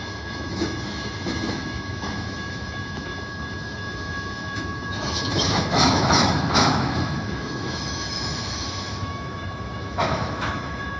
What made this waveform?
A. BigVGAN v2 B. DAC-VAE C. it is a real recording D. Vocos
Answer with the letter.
B